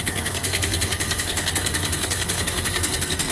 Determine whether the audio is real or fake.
fake